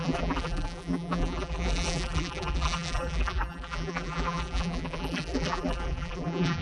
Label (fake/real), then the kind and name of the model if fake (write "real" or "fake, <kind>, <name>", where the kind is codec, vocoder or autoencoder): fake, vocoder, BigVGAN v2